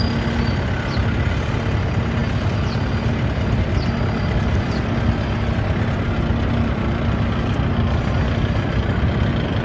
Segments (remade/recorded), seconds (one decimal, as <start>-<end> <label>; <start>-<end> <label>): 0.0-9.6 recorded